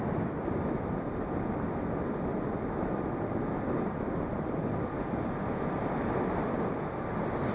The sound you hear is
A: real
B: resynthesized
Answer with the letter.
A